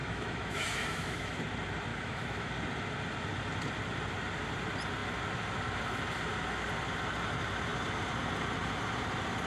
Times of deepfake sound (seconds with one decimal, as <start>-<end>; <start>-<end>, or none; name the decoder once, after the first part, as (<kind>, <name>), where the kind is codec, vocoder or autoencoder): 0.0-1.4 (autoencoder, DAC-VAE); 1.9-2.5